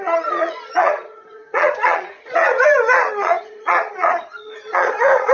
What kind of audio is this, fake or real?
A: fake